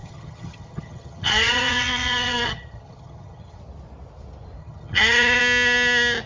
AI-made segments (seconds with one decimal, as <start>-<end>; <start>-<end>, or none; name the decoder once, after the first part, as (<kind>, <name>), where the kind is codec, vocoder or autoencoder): 0.0-3.6 (vocoder, HiFi-GAN); 4.6-5.4